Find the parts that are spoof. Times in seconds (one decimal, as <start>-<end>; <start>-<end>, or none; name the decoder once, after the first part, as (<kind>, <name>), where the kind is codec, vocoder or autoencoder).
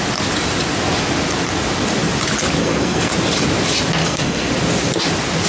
2.6-3.1 (codec, SNAC); 4.0-4.5